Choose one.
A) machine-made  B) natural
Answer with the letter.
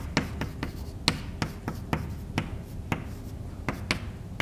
B